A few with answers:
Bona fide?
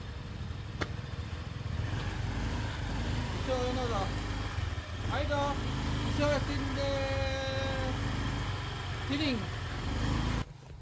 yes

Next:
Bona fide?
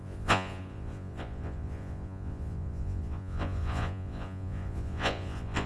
no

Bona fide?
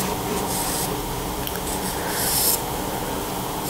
no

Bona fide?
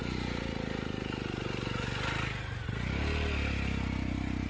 yes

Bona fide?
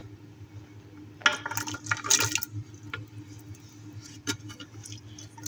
yes